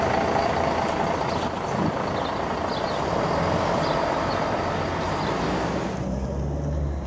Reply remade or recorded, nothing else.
recorded